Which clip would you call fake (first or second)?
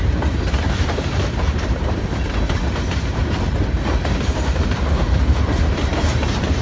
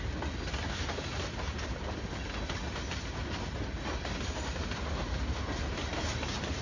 first